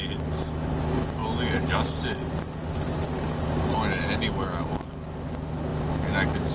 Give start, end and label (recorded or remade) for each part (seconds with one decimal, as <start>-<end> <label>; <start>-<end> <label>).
0.0-6.5 recorded